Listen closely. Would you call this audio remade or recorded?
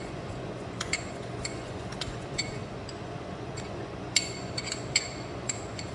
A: remade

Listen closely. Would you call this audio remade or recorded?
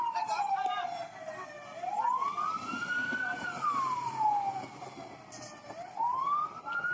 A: recorded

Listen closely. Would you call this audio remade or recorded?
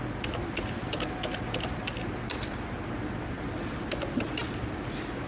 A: recorded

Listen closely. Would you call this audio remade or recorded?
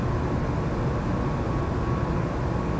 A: recorded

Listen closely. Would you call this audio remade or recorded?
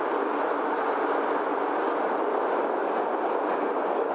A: recorded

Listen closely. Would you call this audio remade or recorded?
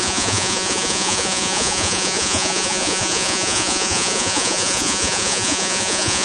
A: remade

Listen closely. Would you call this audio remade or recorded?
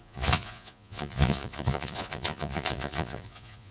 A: remade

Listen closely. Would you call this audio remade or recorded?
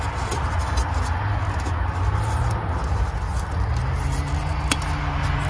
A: recorded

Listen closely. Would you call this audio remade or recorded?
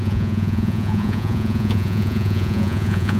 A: remade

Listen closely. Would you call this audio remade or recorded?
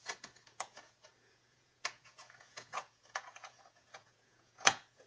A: remade